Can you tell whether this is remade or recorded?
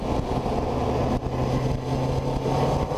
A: recorded